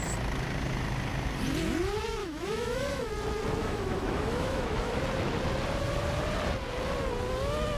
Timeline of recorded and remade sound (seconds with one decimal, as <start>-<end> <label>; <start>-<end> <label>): 0.0-2.2 recorded; 2.2-3.1 remade; 3.1-3.6 recorded; 3.6-5.0 remade; 5.0-7.8 recorded